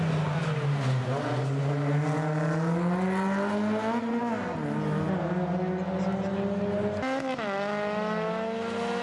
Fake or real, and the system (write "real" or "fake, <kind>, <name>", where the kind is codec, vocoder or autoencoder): real